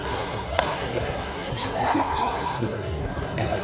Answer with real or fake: fake